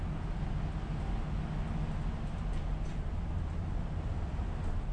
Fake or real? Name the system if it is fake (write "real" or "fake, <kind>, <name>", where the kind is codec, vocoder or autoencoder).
real